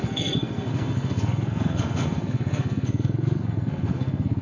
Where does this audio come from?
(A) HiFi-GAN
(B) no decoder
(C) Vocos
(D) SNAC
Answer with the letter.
D